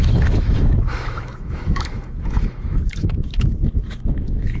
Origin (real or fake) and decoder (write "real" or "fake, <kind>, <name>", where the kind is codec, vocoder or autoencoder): fake, autoencoder, DAC-VAE